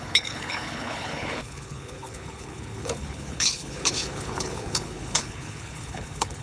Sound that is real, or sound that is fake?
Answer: fake